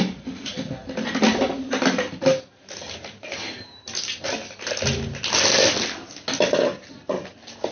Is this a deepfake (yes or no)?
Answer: no